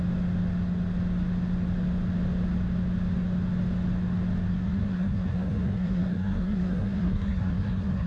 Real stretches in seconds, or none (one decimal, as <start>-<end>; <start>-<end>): 0.0-4.5